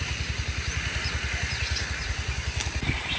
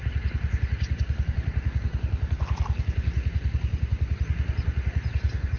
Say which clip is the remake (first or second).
first